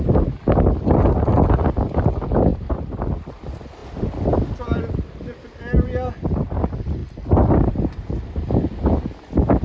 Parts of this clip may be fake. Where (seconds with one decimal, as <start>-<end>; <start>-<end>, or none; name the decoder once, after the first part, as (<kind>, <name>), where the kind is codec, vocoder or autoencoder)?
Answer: 2.5-3.1 (vocoder, BigVGAN v2)